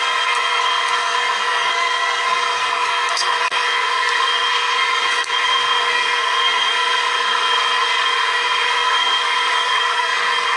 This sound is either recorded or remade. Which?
remade